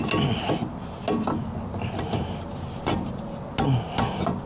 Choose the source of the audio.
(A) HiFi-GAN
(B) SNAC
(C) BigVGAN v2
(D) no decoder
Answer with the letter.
D